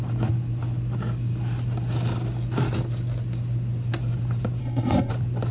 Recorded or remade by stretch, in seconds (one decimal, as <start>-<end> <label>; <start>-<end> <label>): 0.0-4.6 recorded; 4.6-5.1 remade; 5.1-5.5 recorded